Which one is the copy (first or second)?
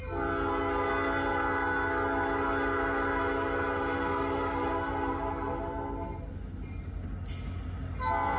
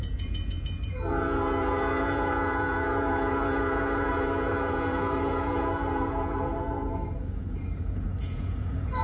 second